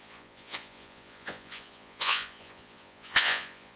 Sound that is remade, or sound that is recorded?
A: remade